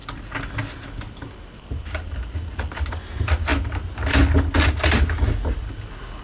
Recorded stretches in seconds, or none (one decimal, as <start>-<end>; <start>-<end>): 0.0-6.2

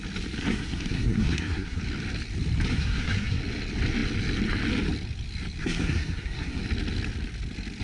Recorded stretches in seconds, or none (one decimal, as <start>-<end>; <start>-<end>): 0.0-0.5; 1.8-2.7; 3.4-5.6; 6.6-7.8